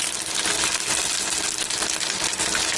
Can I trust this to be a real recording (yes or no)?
yes